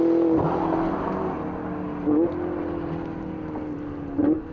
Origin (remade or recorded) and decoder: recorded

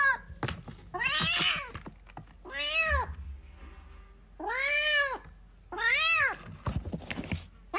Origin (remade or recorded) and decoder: recorded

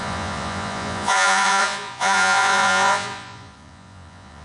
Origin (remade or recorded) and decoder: remade, vocoder, Vocos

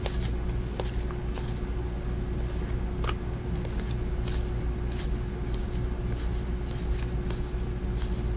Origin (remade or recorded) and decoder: recorded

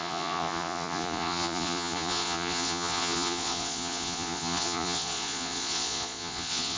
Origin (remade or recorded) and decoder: remade, vocoder, Vocos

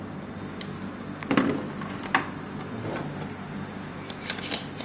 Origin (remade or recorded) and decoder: recorded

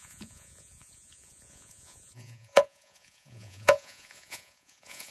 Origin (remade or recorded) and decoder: remade, vocoder, Vocos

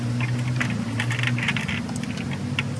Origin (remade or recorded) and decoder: recorded